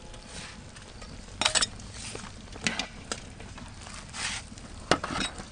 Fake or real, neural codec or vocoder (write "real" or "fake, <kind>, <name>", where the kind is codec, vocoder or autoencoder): real